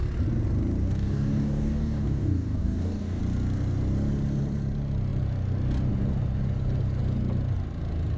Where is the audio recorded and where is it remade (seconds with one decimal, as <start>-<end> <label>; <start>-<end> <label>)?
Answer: 0.0-0.8 recorded; 0.8-3.2 remade; 3.2-8.2 recorded